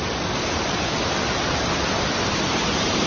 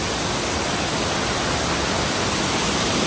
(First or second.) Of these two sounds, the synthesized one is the first